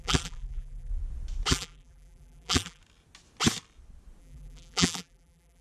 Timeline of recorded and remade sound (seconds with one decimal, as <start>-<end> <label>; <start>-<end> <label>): 0.0-0.9 remade; 0.9-1.5 recorded; 1.5-2.8 remade; 2.8-4.2 recorded; 4.2-5.6 remade